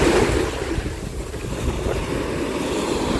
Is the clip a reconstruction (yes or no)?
no